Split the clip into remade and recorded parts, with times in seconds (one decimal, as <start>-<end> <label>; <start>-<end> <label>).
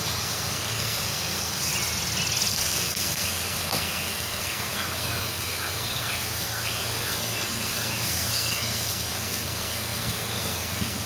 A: 0.0-1.7 remade; 1.7-2.5 recorded; 2.5-11.1 remade